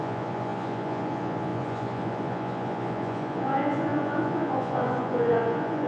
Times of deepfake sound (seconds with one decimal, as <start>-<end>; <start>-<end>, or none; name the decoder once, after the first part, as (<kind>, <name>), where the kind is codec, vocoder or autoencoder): 0.0-5.9 (vocoder, Vocos)